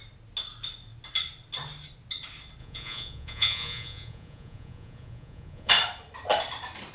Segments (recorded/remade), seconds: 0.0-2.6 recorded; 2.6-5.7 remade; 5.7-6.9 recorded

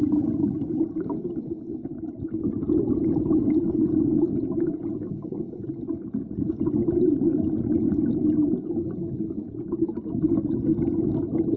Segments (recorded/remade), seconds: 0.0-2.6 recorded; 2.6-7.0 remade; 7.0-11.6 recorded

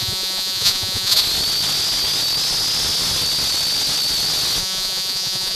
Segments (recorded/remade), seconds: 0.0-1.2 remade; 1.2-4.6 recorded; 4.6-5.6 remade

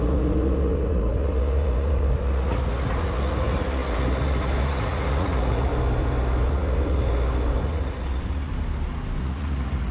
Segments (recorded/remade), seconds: 0.0-5.7 remade; 5.7-6.5 recorded; 6.5-7.0 remade; 7.0-7.6 recorded; 7.6-8.5 remade; 8.5-9.2 recorded; 9.2-9.9 remade

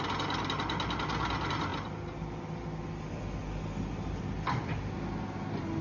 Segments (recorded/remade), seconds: 0.0-5.8 recorded

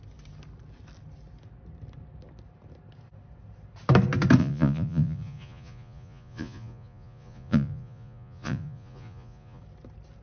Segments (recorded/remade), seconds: 0.0-4.4 recorded; 4.4-9.6 remade; 9.6-10.2 recorded

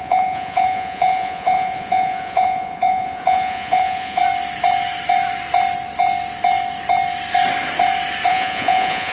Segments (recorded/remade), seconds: 0.0-4.2 remade; 4.2-8.3 recorded; 8.3-9.1 remade

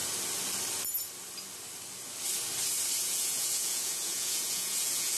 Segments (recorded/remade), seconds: 0.0-3.0 recorded; 3.0-5.2 remade